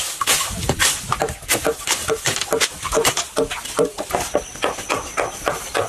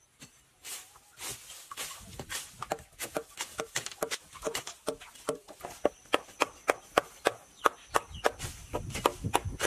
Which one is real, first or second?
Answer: second